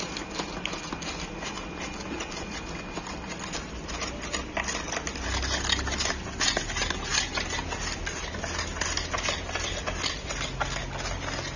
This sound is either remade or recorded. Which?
recorded